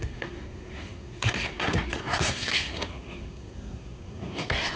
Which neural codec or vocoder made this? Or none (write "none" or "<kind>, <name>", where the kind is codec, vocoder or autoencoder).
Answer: codec, SNAC